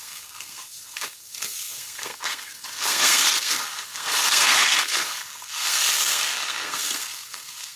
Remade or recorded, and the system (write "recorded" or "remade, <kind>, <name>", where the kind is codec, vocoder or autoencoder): remade, codec, SNAC